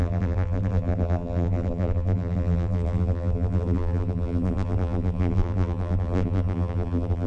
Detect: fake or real fake